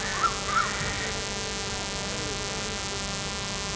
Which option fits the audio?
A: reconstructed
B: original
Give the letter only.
B